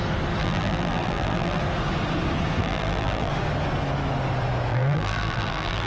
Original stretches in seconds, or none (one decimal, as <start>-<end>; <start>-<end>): 0.0-0.4; 1.6-2.6; 3.3-4.7